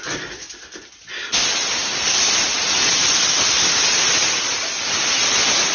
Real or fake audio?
real